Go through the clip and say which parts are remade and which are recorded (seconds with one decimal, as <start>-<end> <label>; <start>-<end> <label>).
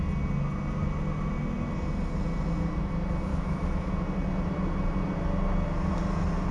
0.0-3.3 recorded; 3.3-3.9 remade; 3.9-6.5 recorded